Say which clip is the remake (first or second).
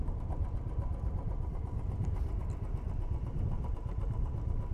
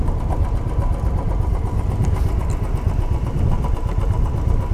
first